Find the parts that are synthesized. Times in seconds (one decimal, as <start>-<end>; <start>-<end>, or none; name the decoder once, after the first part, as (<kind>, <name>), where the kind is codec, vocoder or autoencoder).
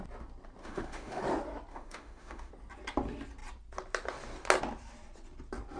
0.6-1.2 (autoencoder, DAC-VAE); 1.7-2.5